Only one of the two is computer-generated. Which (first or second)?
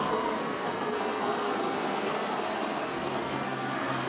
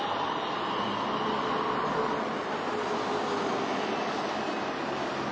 first